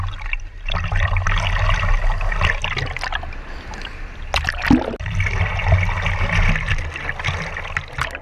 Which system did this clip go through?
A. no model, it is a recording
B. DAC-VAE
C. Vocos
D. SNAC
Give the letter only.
A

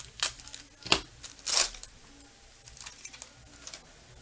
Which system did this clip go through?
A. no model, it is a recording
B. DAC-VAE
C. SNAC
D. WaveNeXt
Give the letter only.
A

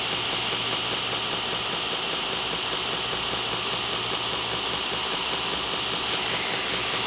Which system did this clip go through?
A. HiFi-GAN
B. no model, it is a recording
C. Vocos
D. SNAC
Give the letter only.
B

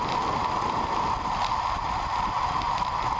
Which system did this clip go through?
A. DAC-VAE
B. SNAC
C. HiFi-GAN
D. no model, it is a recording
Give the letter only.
D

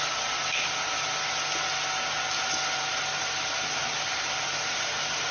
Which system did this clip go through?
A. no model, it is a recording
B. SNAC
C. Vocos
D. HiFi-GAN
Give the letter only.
A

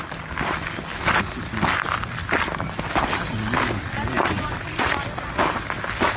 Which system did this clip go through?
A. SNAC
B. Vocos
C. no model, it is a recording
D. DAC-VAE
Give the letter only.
C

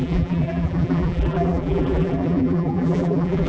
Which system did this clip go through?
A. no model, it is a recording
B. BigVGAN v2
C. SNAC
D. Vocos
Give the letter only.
B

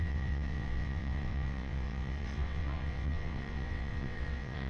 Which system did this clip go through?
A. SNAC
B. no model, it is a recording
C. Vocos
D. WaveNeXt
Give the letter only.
D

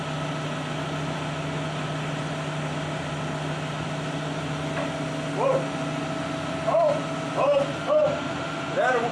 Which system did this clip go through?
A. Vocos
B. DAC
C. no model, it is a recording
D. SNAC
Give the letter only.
C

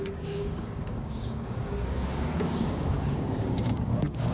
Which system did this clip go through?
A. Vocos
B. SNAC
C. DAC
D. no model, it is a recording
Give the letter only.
C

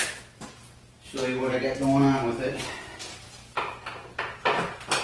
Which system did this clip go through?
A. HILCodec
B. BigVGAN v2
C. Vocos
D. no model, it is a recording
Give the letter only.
D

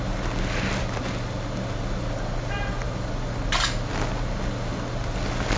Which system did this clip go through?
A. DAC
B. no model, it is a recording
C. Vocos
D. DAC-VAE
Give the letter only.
B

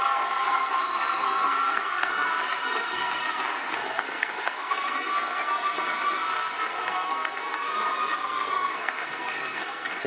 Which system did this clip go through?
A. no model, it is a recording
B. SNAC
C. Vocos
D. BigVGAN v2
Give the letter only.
B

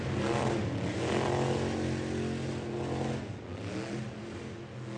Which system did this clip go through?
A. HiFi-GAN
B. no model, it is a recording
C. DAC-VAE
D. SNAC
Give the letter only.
B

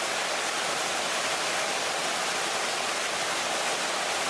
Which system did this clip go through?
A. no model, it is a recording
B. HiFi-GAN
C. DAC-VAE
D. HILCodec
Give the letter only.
A